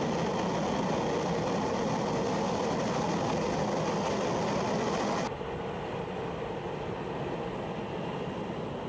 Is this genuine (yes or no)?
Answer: yes